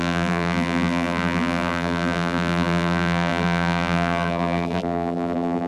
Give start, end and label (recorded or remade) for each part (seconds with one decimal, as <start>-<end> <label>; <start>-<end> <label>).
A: 0.0-5.7 remade